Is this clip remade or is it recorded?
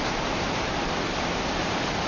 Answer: recorded